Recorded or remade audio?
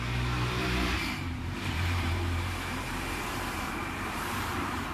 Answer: remade